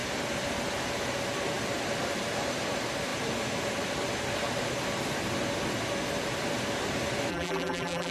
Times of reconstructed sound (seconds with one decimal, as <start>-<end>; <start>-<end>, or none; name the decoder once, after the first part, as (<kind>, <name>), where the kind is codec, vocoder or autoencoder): 7.3-8.1 (vocoder, BigVGAN v2)